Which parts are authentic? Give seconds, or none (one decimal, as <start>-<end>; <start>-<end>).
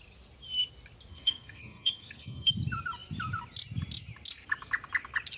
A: 0.0-1.1; 2.5-5.4